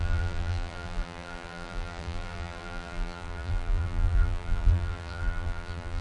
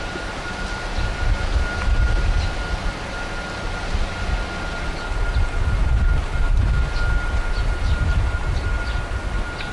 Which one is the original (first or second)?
second